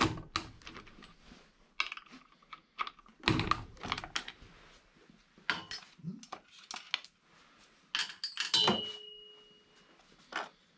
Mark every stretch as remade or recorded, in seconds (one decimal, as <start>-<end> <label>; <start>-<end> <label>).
0.0-10.8 recorded